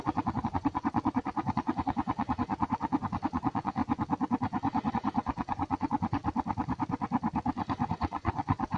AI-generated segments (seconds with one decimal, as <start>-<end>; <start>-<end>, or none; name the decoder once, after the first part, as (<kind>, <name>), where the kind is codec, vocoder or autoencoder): 0.0-3.8 (vocoder, Vocos); 4.9-6.2; 7.9-8.8